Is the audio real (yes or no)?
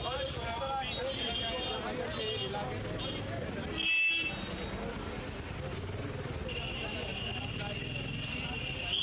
yes